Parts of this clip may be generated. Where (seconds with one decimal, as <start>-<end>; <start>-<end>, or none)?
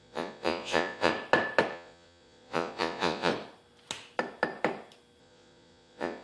0.0-1.1; 1.7-3.3; 5.2-6.2